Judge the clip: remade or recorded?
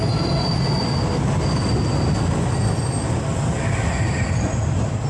recorded